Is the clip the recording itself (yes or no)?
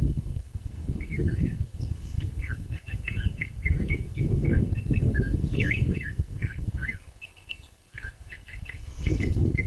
no